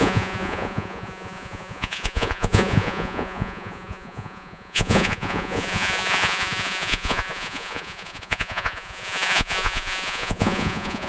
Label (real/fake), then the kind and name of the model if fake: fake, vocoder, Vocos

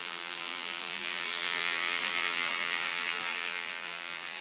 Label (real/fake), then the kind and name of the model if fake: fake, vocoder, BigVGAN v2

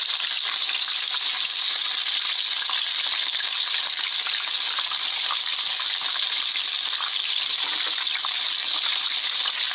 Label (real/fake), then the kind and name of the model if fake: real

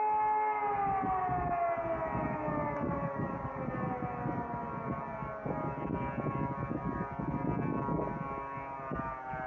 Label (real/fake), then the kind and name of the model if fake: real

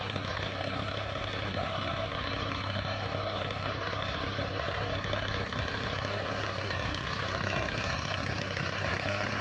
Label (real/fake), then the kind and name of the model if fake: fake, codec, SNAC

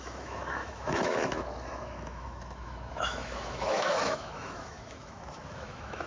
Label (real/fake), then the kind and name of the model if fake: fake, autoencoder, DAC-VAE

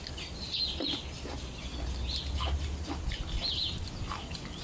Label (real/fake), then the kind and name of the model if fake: real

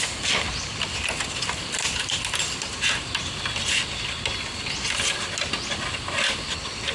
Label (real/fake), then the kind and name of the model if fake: real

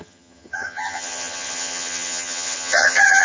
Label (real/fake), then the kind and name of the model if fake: fake, vocoder, HiFi-GAN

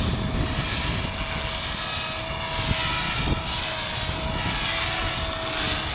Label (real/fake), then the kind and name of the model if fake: real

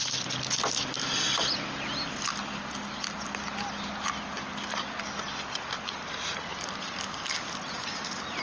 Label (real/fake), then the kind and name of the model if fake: real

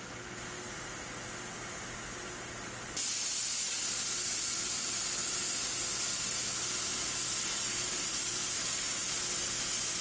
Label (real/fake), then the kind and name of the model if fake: real